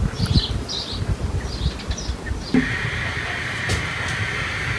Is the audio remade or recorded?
recorded